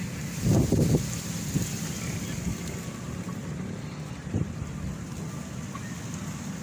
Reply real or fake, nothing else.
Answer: real